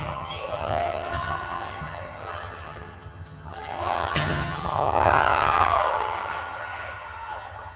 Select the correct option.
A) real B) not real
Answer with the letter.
B